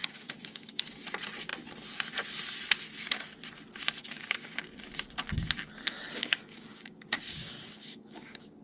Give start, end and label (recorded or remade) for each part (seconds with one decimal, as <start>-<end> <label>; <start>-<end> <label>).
0.0-0.8 remade; 0.8-4.0 recorded; 4.0-4.8 remade; 4.8-6.2 recorded; 6.2-8.6 remade